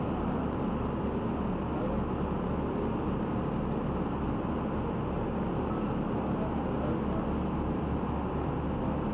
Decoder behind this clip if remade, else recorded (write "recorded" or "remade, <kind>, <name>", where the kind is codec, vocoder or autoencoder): recorded